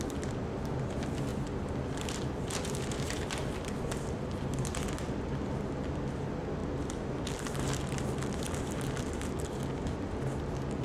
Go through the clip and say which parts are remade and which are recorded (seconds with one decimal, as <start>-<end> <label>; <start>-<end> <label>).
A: 0.0-10.8 recorded

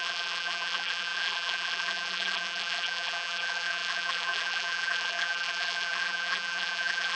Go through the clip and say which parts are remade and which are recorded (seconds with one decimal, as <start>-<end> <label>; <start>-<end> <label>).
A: 0.0-7.2 remade

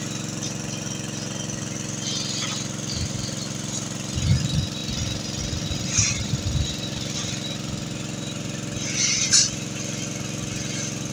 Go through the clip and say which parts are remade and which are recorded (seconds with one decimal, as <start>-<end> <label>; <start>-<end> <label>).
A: 0.0-11.1 recorded

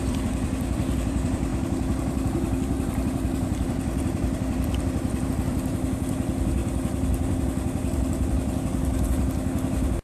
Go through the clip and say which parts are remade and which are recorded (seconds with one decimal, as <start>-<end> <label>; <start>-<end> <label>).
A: 0.0-6.6 remade; 6.6-10.0 recorded

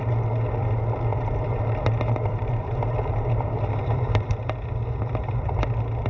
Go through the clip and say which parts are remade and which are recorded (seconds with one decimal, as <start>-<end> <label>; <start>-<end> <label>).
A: 0.0-1.1 recorded; 1.1-4.3 remade; 4.3-6.1 recorded

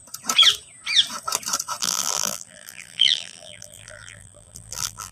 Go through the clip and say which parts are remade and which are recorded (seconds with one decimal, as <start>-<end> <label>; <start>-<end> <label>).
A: 0.0-1.8 recorded; 1.8-5.1 remade